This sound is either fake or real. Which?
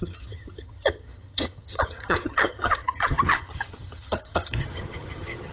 fake